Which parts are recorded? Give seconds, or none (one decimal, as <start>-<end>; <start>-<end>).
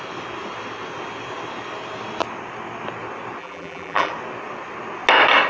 0.0-3.4; 4.1-5.5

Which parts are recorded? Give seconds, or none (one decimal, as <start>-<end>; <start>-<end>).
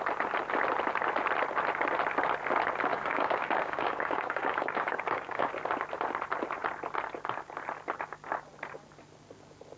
0.0-2.9; 5.5-9.8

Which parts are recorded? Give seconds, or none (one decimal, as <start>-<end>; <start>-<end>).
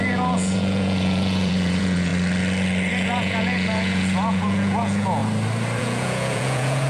2.1-2.9; 5.2-5.8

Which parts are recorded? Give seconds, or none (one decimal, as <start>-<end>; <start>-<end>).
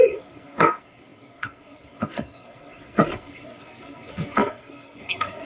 none